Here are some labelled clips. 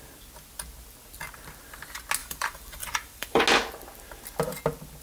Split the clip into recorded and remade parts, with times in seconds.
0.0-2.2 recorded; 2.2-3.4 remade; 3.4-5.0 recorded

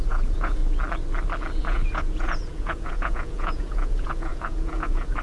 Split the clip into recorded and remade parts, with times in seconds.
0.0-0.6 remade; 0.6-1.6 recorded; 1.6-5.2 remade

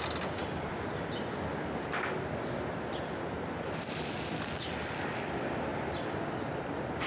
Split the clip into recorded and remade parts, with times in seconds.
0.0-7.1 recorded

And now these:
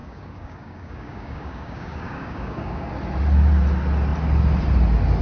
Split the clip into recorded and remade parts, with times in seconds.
0.0-2.9 remade; 2.9-5.2 recorded

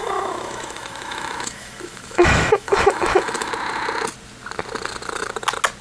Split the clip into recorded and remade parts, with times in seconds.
0.0-3.5 remade; 3.5-5.8 recorded

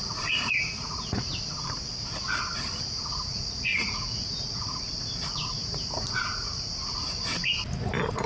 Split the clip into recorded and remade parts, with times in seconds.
0.0-1.3 remade; 1.3-3.3 recorded; 3.3-4.9 remade; 4.9-5.6 recorded; 5.6-6.7 remade; 6.7-8.3 recorded

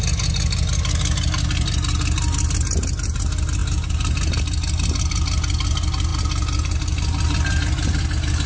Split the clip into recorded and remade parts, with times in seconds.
0.0-8.5 recorded

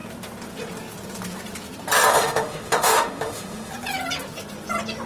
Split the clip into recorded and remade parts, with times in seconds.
0.0-2.1 recorded; 2.1-3.7 remade; 3.7-5.1 recorded